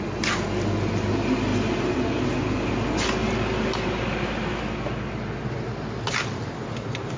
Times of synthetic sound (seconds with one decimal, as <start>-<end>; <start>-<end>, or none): none